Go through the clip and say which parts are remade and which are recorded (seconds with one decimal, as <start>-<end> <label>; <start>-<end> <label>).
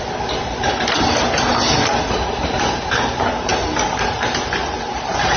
0.0-5.4 recorded